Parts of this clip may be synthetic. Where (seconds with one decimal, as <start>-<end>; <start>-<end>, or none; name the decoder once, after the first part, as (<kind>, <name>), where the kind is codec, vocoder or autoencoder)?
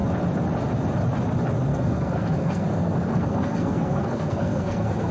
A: 1.7-5.1 (codec, SNAC)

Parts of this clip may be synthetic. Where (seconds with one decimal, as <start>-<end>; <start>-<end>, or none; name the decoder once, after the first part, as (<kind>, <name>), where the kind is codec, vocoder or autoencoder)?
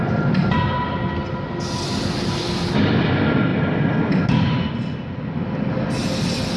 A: none